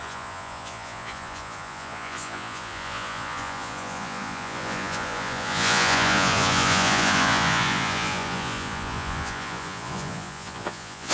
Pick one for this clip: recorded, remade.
remade